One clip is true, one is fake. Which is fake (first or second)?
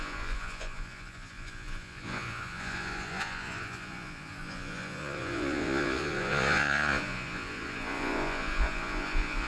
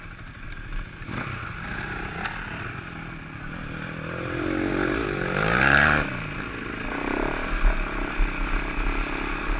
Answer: first